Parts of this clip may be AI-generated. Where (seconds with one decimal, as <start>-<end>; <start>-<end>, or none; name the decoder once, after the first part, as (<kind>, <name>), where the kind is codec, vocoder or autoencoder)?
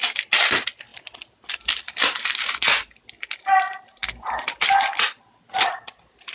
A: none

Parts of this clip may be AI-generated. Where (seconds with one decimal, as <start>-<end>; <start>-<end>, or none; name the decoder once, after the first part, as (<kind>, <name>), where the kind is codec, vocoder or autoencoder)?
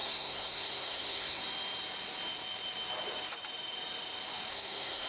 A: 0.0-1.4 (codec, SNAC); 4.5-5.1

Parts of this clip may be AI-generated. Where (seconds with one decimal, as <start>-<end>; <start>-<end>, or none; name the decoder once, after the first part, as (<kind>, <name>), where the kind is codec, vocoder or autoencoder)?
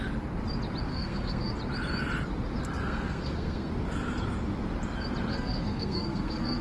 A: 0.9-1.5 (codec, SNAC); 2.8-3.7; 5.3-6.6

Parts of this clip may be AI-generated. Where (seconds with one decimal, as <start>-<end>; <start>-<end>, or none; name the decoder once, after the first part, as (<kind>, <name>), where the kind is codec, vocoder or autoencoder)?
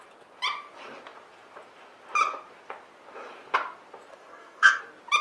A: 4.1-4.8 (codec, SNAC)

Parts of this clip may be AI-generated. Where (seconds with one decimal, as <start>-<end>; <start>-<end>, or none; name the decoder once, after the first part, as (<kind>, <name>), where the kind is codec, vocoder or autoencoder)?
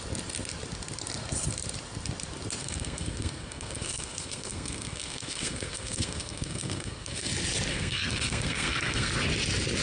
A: 2.6-7.3 (codec, SNAC); 7.7-9.1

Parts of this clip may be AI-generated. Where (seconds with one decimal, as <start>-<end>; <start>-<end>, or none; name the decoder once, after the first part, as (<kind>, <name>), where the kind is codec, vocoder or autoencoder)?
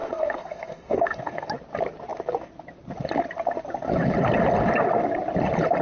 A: 0.0-1.5 (codec, SNAC)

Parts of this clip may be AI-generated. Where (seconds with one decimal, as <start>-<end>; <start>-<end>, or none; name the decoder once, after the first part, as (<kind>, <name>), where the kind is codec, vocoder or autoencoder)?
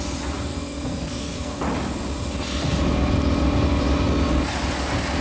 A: 0.5-1.6 (codec, SNAC)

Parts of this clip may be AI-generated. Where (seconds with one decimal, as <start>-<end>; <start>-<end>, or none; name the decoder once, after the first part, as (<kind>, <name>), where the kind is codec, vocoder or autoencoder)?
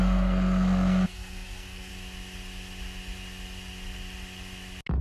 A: 0.0-1.9 (codec, SNAC)